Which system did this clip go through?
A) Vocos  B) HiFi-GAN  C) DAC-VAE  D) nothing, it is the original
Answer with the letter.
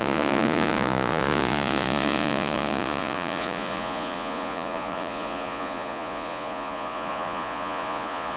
A